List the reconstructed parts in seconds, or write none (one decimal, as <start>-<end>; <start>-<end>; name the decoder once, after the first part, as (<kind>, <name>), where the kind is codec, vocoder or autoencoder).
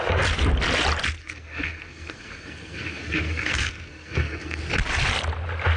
1.2-4.6 (codec, SNAC)